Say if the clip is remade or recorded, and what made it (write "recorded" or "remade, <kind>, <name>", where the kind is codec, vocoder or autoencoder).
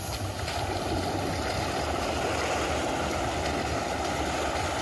recorded